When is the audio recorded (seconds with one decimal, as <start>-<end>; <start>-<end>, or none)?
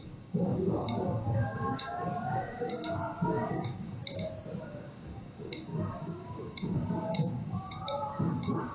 4.0-4.6